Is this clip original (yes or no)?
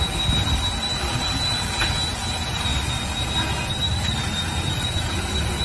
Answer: yes